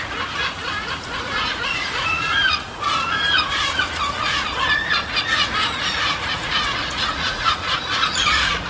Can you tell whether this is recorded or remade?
remade